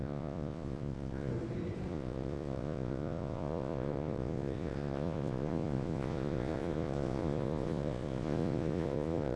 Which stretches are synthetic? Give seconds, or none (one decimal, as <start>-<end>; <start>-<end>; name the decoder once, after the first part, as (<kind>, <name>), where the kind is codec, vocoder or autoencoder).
0.0-1.3 (vocoder, Vocos); 1.9-9.4